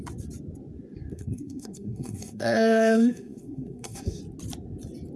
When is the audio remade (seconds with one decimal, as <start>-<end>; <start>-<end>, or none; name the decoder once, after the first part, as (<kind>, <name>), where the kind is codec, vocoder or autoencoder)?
1.1-4.2 (codec, SNAC)